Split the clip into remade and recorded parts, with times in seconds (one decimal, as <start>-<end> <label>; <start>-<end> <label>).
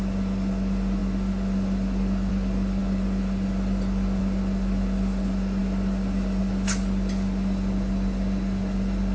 0.0-9.1 recorded